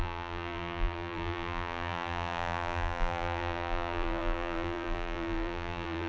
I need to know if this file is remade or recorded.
remade